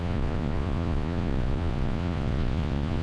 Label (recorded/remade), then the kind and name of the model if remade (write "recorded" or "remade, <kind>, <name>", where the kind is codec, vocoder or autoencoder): remade, vocoder, Vocos